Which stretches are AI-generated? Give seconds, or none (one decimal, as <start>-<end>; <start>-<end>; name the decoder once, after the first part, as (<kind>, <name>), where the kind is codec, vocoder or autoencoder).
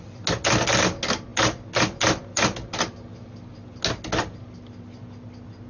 none